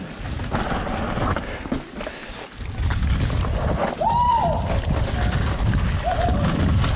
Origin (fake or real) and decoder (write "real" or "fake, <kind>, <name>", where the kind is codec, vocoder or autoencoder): real